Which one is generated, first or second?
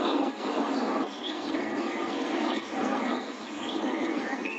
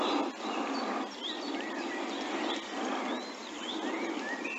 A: first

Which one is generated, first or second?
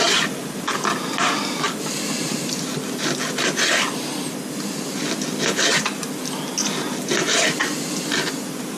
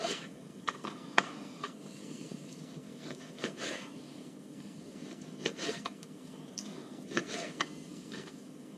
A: second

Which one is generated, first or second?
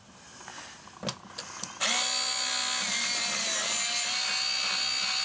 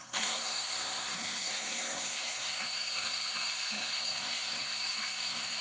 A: second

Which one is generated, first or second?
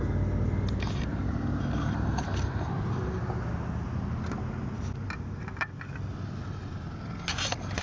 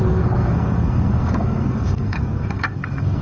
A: second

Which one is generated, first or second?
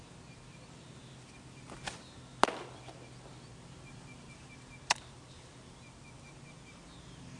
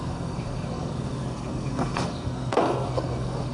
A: second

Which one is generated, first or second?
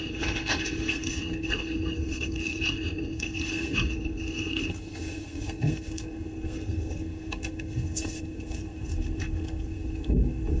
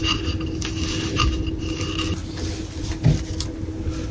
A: first